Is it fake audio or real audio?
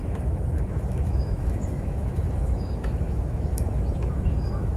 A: fake